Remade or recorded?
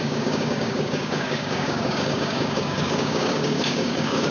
remade